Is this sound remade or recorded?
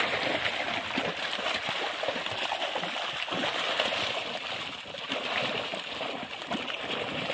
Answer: recorded